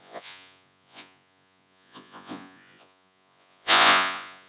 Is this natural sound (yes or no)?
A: no